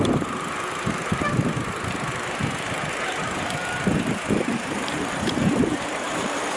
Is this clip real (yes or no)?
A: no